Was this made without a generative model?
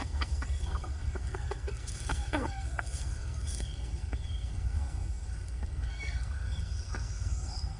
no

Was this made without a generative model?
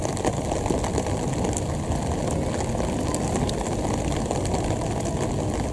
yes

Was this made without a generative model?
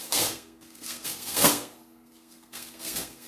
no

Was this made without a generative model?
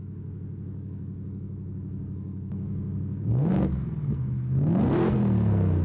no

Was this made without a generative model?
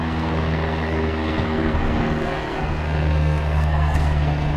no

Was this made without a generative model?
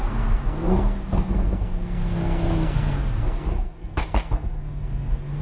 no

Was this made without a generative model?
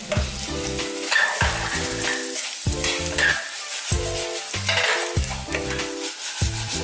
yes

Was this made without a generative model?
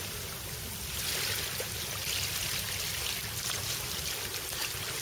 yes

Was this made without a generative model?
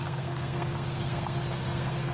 no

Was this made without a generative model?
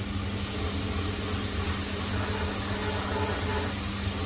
yes